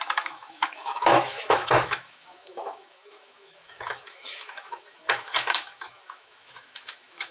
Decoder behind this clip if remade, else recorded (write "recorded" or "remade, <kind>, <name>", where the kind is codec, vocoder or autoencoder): remade, autoencoder, DAC-VAE